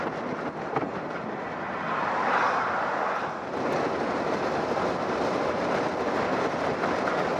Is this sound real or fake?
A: real